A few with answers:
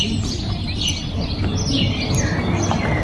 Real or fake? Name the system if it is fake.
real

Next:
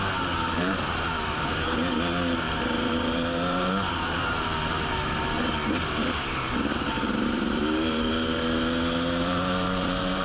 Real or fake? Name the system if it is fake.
fake, vocoder, BigVGAN v2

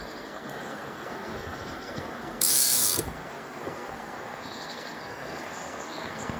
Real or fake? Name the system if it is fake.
fake, codec, SNAC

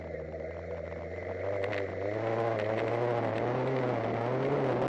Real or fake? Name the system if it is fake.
real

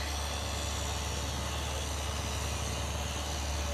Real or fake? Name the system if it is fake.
real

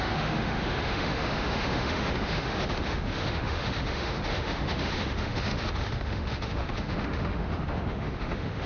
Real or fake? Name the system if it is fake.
fake, autoencoder, DAC-VAE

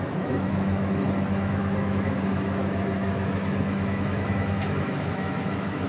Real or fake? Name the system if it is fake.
fake, autoencoder, DAC-VAE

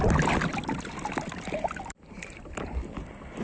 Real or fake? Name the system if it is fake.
real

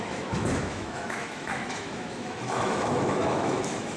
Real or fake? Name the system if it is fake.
fake, autoencoder, DAC-VAE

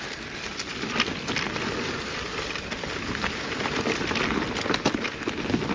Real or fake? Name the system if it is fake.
real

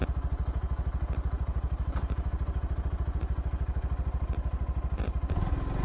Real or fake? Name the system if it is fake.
real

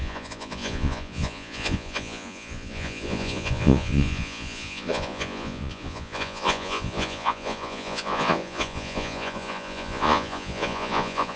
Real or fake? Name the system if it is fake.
fake, vocoder, Vocos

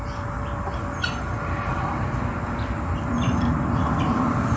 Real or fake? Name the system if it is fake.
real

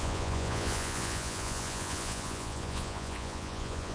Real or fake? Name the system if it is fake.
fake, vocoder, Vocos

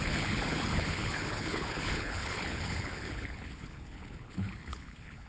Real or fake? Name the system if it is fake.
fake, codec, HILCodec